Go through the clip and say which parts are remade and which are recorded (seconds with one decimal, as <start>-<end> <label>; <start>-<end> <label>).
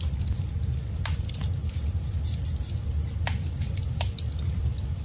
0.0-5.0 recorded